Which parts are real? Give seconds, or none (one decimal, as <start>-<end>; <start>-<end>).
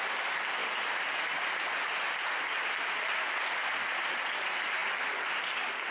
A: 0.0-0.6; 2.5-3.6; 4.2-5.9